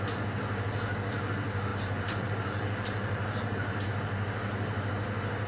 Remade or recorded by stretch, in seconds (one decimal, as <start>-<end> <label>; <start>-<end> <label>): 0.0-1.7 recorded; 1.7-3.8 remade; 3.8-5.5 recorded